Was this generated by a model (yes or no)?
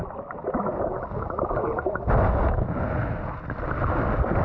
no